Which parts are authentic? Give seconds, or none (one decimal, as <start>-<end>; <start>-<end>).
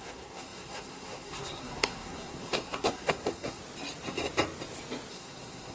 3.6-5.1